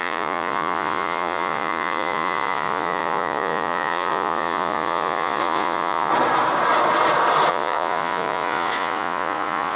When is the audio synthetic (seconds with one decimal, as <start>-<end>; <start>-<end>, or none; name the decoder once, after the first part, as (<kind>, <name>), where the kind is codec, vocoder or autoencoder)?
0.0-6.1 (vocoder, Vocos); 7.5-9.8